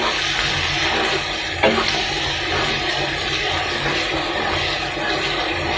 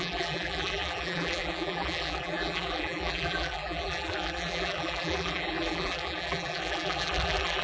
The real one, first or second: first